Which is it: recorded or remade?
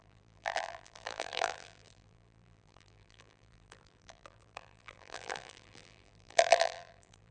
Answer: remade